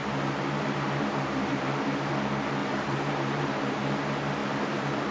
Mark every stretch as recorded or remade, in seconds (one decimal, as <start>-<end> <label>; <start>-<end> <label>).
0.0-2.1 remade; 2.1-2.6 recorded; 2.6-3.8 remade; 3.8-4.4 recorded; 4.4-5.1 remade